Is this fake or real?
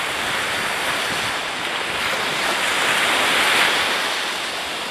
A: real